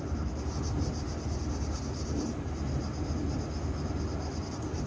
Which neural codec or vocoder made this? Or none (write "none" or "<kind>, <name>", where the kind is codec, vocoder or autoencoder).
none